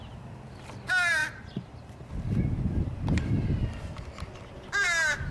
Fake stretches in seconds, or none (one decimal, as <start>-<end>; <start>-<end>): 1.2-2.1